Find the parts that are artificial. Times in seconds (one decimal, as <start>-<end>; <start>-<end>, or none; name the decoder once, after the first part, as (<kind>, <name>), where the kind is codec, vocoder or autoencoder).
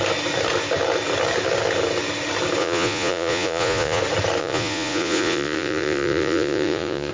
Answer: 2.6-4.0 (vocoder, Vocos); 4.4-7.1